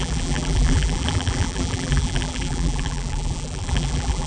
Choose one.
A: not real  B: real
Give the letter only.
A